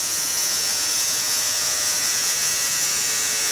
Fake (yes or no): yes